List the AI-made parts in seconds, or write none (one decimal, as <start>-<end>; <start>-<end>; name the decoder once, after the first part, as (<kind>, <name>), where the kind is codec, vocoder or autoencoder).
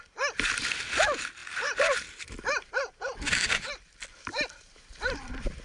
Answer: none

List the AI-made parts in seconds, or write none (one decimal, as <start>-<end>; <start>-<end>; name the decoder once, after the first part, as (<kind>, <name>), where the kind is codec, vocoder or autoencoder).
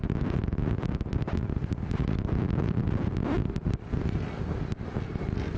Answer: none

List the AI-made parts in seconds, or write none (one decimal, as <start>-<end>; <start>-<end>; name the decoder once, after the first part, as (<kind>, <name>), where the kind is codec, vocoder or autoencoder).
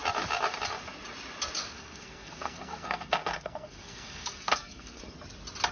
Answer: 1.6-5.0 (codec, SNAC)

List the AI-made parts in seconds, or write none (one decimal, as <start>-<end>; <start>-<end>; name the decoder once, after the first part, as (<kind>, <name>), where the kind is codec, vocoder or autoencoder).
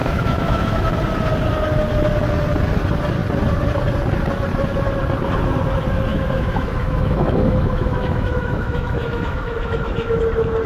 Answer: 0.0-0.9 (autoencoder, DAC-VAE); 6.1-10.2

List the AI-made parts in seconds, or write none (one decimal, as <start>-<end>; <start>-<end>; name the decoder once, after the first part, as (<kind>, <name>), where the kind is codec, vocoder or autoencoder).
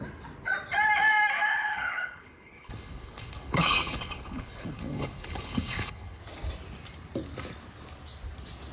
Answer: 1.5-6.2 (codec, HILCodec)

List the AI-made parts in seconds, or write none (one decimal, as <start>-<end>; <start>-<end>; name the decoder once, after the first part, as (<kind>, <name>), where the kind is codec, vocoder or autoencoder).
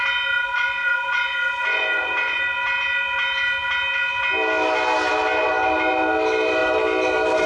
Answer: 0.8-2.4 (vocoder, Vocos)